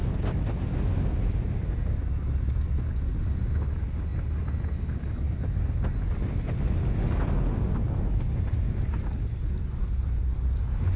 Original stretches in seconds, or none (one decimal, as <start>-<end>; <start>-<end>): 0.0-11.0